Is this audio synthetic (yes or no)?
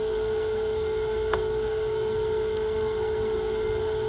yes